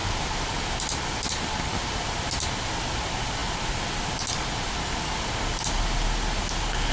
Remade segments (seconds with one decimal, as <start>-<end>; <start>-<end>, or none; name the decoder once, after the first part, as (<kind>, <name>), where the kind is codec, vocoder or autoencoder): none